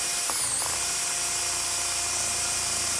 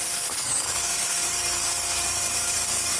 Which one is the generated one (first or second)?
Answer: second